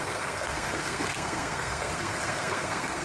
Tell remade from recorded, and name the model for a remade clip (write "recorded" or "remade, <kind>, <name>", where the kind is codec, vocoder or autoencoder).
remade, codec, SNAC